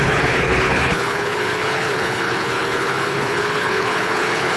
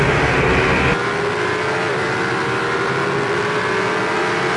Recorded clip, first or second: second